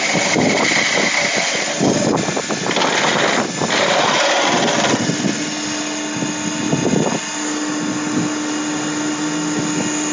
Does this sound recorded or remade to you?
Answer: recorded